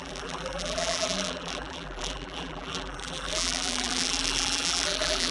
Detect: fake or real fake